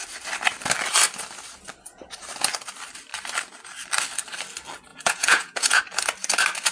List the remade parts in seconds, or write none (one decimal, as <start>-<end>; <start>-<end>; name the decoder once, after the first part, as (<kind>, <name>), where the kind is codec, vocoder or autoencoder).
4.9-5.8 (vocoder, Vocos)